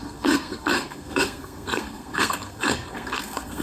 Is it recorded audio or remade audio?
remade